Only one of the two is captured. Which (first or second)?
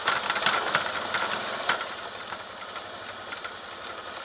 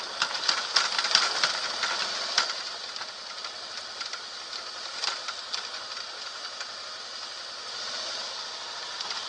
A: second